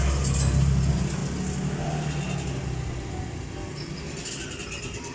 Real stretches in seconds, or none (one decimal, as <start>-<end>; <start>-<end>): 0.0-5.1